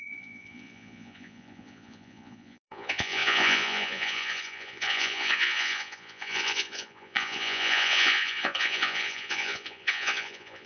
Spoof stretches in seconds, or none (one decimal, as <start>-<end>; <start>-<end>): 0.0-10.7

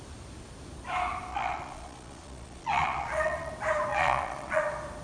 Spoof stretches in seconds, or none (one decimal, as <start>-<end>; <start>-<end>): 1.3-3.5; 3.9-4.6